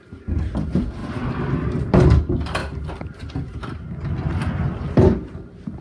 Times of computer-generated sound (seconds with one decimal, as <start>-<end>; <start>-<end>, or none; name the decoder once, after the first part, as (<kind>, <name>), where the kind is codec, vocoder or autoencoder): none